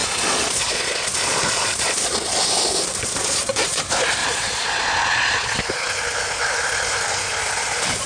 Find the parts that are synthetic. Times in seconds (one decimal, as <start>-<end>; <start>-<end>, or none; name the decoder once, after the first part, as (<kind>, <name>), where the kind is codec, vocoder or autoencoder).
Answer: 0.0-2.4 (vocoder, Vocos); 3.0-3.8; 4.2-5.6